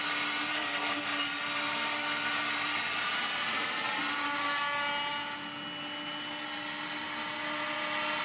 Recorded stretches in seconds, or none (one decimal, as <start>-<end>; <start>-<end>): 0.0-3.4; 4.0-8.2